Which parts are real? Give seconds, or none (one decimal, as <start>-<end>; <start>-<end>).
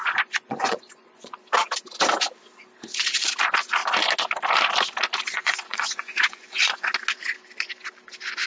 1.4-5.3; 6.9-8.5